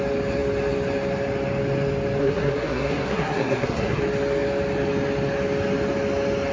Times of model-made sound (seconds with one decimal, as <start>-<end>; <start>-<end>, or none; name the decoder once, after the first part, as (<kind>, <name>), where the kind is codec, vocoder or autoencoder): 2.2-4.0 (codec, SNAC)